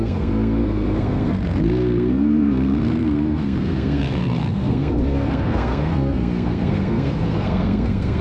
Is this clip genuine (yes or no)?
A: no